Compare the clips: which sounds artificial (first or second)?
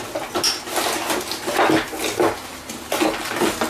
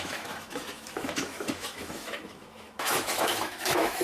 second